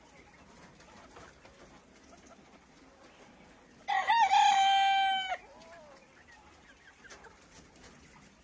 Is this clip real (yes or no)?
yes